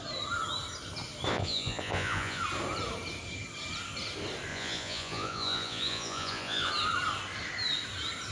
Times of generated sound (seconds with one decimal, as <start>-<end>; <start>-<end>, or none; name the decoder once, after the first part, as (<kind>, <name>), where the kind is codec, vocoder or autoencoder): 1.3-2.4 (vocoder, Vocos); 4.5-6.7